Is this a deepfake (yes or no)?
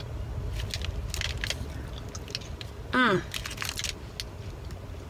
no